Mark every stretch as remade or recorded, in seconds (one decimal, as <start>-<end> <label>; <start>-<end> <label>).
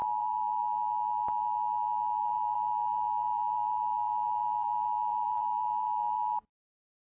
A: 0.0-0.6 remade; 0.6-2.2 recorded; 2.2-6.5 remade; 6.5-7.2 recorded